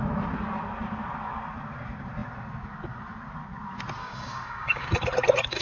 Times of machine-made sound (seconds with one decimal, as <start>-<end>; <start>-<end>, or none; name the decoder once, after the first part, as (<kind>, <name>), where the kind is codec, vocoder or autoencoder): 4.0-4.9 (codec, DAC)